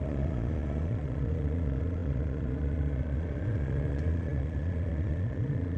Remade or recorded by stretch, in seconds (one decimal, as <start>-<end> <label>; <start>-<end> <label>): 0.0-5.8 remade